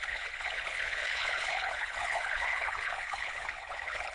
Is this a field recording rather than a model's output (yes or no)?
no